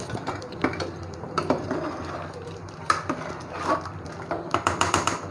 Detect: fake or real fake